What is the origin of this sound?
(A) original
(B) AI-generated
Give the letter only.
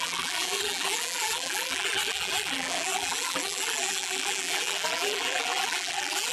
B